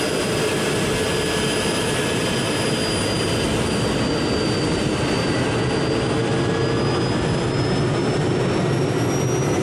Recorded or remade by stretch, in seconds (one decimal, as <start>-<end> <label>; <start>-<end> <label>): 0.0-9.6 recorded